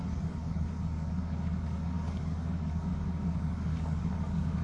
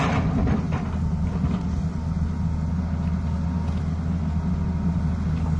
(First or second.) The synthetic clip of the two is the first